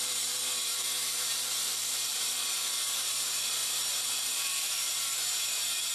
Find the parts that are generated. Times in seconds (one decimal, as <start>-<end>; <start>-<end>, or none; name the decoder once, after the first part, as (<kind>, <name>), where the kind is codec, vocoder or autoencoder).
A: 0.0-5.9 (vocoder, BigVGAN v2)